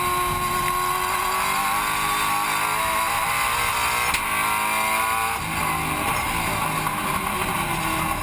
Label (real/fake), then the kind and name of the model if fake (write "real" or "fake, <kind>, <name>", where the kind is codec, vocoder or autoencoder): real